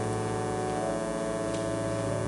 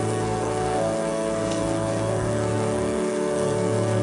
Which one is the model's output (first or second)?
second